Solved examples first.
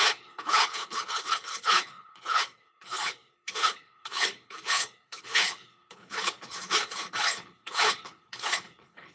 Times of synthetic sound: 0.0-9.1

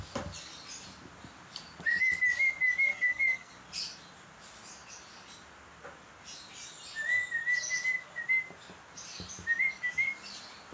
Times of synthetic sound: 2.9-3.5

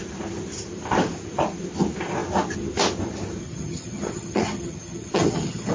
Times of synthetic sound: 3.4-5.7

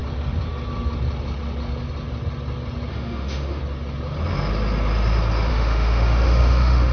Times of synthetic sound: 2.9-3.6; 5.5-6.9

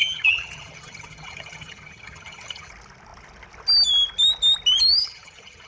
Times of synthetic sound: 0.0-2.7; 5.0-5.7

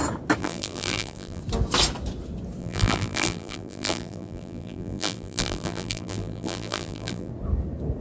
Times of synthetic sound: 0.4-1.4; 2.6-7.3

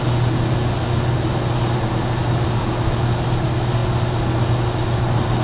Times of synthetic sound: none